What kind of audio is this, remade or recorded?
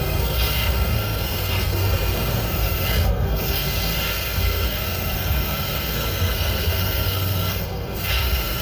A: remade